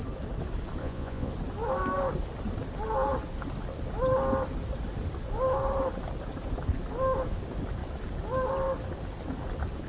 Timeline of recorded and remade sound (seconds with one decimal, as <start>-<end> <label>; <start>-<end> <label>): 0.0-0.8 recorded; 0.8-1.3 remade; 1.3-9.9 recorded